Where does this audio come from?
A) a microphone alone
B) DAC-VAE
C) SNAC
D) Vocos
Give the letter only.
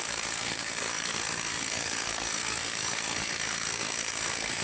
C